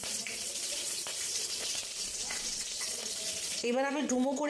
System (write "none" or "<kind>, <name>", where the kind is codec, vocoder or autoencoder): vocoder, Vocos